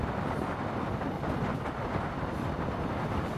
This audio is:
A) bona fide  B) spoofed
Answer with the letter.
A